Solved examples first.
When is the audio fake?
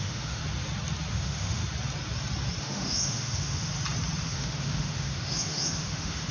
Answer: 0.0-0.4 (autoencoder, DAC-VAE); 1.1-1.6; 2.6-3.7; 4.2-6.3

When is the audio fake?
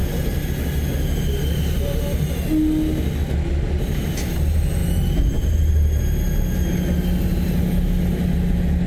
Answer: none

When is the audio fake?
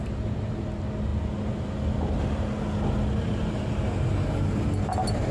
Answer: none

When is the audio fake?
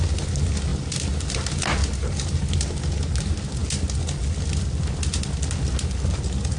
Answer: none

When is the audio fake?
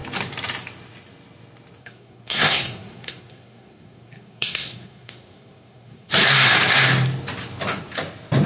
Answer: 1.8-6.1 (codec, SNAC)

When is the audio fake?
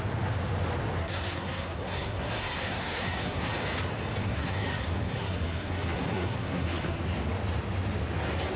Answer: 1.0-3.5 (codec, SNAC); 4.2-7.0